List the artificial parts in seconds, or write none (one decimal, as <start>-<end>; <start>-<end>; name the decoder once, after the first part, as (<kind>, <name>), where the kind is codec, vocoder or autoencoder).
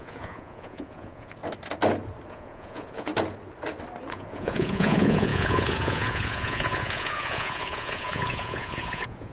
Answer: 0.0-1.4 (vocoder, Vocos); 2.3-3.1; 4.1-9.3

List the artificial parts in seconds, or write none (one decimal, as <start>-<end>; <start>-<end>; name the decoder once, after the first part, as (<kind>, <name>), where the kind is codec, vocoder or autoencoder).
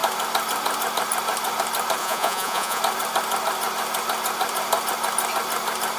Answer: 2.0-2.8 (vocoder, Vocos)